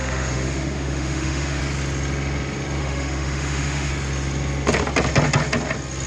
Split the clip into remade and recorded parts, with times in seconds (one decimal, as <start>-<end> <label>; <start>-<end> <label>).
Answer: 0.0-1.6 remade; 1.6-2.8 recorded; 2.8-3.9 remade; 3.9-6.1 recorded